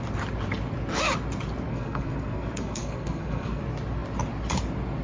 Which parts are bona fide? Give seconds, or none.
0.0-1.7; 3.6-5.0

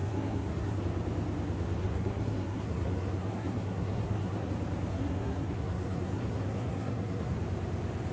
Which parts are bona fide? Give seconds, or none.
0.8-1.8; 4.5-4.9; 7.4-8.1

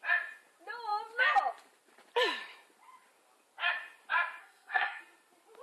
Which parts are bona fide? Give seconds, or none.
0.0-4.4; 5.0-5.6

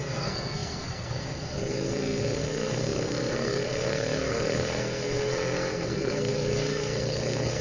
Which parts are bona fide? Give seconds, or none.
none

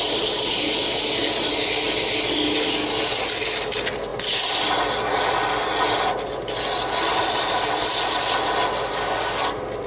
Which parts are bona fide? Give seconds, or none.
0.0-9.9

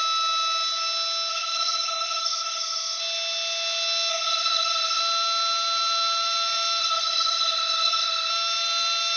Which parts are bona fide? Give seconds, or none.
0.0-1.3; 3.0-4.1; 5.0-6.8; 8.3-9.2

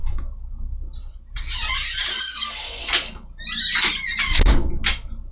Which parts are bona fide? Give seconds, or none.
0.0-2.2; 2.8-5.3

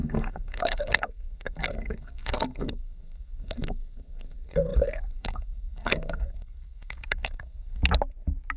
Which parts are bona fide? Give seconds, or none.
7.8-8.6